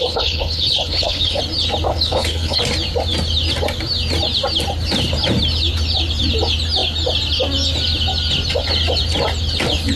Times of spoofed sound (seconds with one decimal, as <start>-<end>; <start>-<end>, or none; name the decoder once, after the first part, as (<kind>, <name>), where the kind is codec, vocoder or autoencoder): 0.0-1.4 (codec, HILCodec); 1.9-2.6